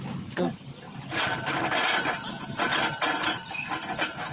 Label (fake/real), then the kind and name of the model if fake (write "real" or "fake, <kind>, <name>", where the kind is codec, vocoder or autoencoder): real